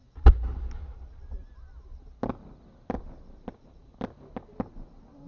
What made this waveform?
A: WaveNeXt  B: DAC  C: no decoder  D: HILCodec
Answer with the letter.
C